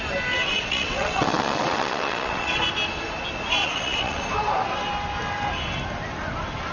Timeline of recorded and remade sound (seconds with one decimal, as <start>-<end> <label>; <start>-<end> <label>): 0.0-0.4 recorded; 0.4-2.6 remade; 2.6-3.6 recorded; 3.6-4.2 remade; 4.2-6.7 recorded

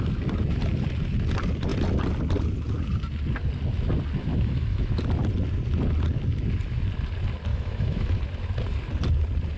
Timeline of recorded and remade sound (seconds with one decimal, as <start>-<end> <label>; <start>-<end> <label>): 0.0-4.3 recorded; 4.3-5.0 remade; 5.0-7.5 recorded; 7.5-8.2 remade; 8.2-9.6 recorded

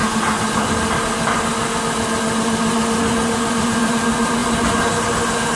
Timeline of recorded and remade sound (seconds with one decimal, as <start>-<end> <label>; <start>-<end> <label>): 0.0-5.6 recorded

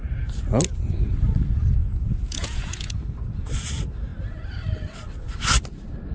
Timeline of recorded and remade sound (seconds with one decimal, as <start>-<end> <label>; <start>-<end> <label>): 0.0-1.8 recorded; 1.8-3.0 remade; 3.0-6.1 recorded

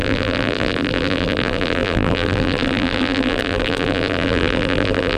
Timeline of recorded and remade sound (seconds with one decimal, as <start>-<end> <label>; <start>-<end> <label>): 0.0-5.2 remade